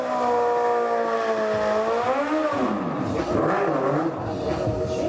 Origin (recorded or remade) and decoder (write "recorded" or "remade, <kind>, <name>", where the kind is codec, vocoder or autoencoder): recorded